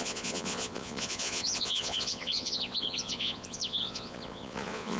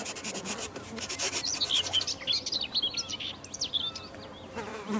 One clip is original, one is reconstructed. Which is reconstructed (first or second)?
first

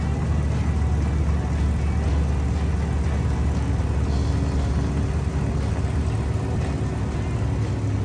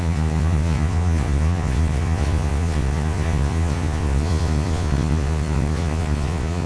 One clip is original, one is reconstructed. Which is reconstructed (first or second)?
second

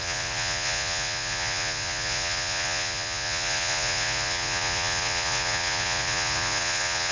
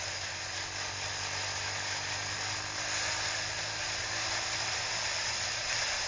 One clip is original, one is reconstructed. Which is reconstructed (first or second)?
first